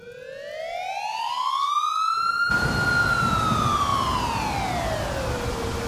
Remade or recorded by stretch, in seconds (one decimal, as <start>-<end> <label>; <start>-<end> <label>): 0.0-1.1 recorded; 1.1-1.7 remade; 1.7-5.9 recorded